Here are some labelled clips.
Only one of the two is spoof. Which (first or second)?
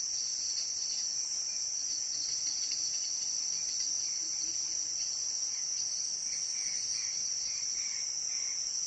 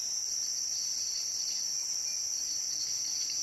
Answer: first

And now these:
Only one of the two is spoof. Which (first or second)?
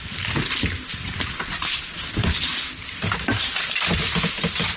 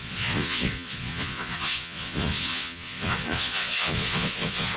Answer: second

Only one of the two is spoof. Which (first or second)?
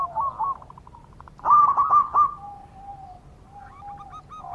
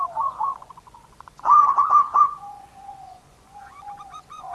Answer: second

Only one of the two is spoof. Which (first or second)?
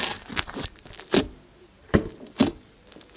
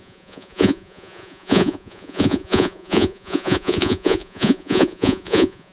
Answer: second